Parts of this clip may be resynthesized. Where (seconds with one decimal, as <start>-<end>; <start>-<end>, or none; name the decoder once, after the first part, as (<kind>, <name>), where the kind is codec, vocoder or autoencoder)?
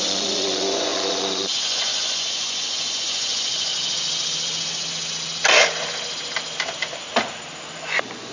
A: 0.0-3.7 (vocoder, Vocos); 7.8-8.3